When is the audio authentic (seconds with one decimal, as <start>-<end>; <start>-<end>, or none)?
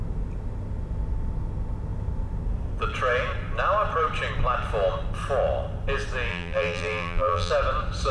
0.0-6.3; 7.5-8.1